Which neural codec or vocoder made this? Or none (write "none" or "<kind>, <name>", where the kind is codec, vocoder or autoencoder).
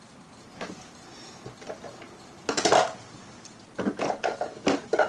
none